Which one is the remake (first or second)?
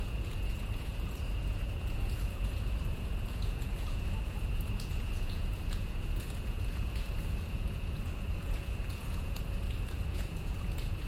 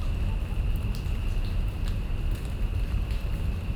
first